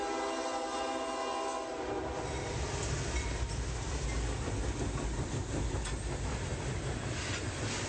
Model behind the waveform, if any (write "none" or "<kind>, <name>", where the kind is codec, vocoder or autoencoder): none